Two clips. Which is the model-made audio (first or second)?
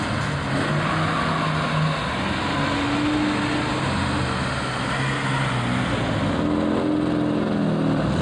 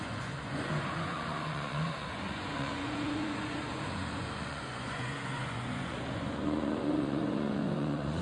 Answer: second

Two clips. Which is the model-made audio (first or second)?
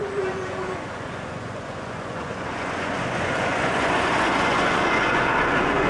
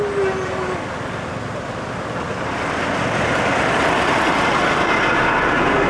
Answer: first